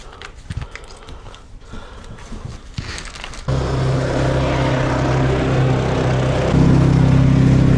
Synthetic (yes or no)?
no